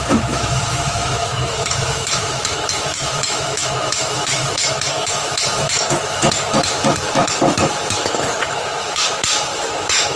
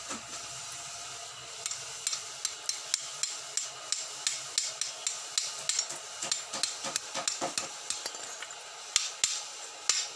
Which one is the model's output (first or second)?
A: first